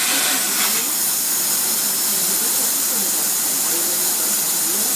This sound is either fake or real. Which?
real